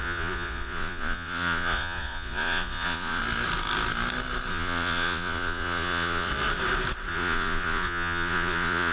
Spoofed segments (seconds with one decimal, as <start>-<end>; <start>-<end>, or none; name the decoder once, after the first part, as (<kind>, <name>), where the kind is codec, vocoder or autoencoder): 0.0-3.2 (vocoder, Vocos); 4.5-6.3; 7.1-8.9